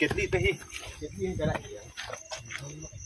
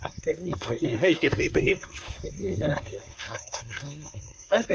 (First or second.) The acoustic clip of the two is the first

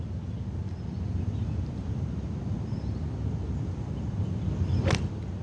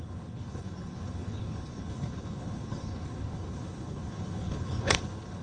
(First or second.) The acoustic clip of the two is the first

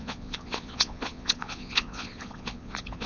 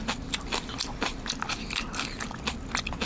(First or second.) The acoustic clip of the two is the second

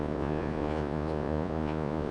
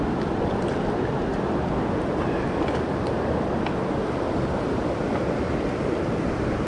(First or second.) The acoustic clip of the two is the second